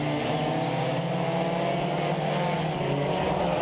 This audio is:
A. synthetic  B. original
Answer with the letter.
B